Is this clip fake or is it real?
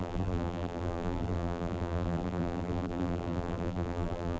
fake